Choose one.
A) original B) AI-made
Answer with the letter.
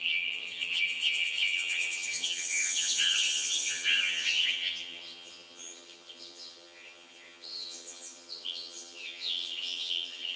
B